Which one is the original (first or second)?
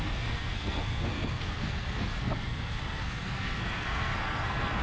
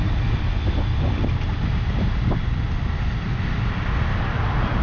second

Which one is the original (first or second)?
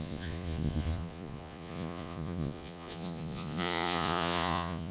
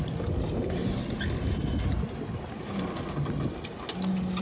second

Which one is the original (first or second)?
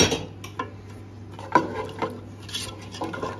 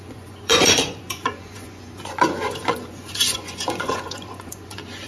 first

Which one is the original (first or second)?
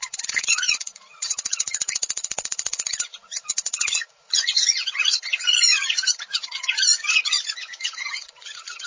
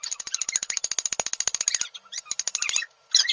second